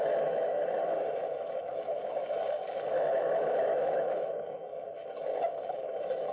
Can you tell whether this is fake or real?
fake